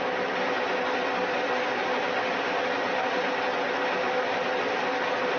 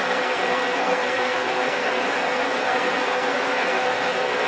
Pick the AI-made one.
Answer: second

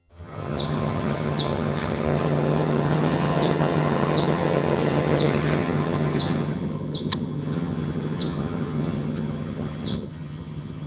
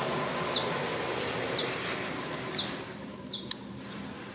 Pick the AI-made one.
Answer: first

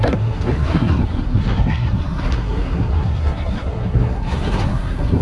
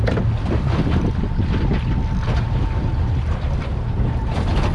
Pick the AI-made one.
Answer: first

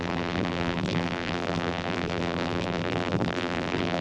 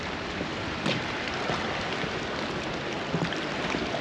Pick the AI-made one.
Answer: first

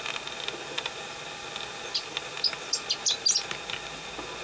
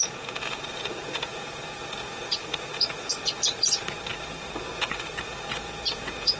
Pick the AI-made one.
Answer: second